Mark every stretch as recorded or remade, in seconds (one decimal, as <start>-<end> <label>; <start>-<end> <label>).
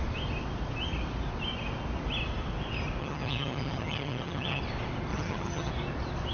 0.0-3.0 recorded; 3.0-4.6 remade; 4.6-5.1 recorded; 5.1-5.7 remade; 5.7-6.3 recorded